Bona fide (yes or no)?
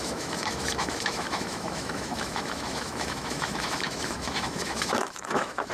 no